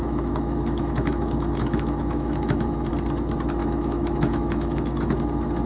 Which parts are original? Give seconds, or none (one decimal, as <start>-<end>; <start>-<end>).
2.9-3.6; 5.1-5.7